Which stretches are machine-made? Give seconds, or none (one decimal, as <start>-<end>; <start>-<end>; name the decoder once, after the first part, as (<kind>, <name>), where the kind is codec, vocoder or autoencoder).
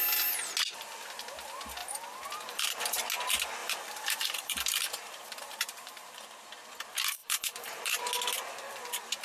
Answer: 1.8-3.0 (vocoder, BigVGAN v2); 3.6-6.5; 7.2-8.1